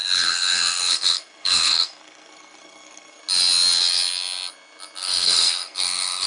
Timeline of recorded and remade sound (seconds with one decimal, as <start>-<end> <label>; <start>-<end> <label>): 0.0-3.2 remade; 3.2-5.0 recorded; 5.0-6.3 remade